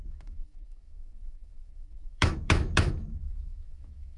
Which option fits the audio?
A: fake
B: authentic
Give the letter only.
A